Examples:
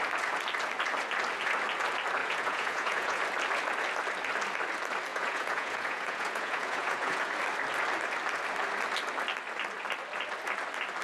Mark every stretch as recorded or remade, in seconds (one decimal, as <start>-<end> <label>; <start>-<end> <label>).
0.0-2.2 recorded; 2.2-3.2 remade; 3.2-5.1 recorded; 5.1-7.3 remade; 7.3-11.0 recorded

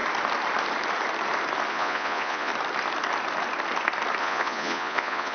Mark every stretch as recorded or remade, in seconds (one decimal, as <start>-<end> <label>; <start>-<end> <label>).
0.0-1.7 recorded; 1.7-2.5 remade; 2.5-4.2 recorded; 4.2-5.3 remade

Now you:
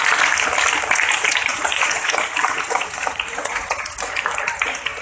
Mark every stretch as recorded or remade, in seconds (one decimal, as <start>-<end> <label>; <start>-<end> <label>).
0.0-1.5 recorded; 1.5-4.0 remade; 4.0-5.0 recorded

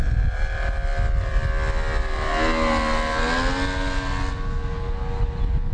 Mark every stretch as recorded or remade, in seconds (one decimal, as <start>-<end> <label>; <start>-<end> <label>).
0.0-5.7 recorded

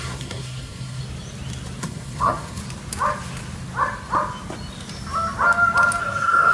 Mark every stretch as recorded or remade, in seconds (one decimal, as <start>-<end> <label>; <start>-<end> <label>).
0.0-1.0 remade; 1.0-1.8 recorded; 1.8-2.6 remade; 2.6-6.0 recorded; 6.0-6.5 remade

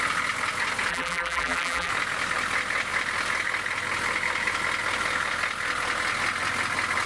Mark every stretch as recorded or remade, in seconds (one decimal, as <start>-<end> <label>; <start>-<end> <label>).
0.0-0.9 recorded; 0.9-1.9 remade; 1.9-7.1 recorded

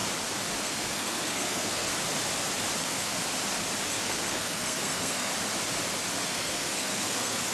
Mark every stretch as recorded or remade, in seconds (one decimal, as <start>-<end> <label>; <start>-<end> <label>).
0.0-0.6 recorded; 0.6-1.9 remade; 1.9-2.8 recorded; 2.8-3.2 remade; 3.2-3.9 recorded; 3.9-5.3 remade; 5.3-6.2 recorded; 6.2-7.5 remade